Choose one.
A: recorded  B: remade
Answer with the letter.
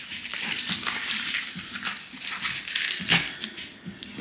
A